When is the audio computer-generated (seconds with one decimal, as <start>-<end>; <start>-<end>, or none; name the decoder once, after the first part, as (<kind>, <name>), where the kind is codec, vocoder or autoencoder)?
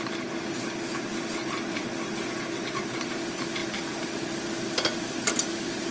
none